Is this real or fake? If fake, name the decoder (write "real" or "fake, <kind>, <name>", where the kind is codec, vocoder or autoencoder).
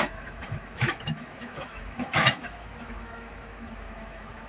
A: fake, autoencoder, DAC-VAE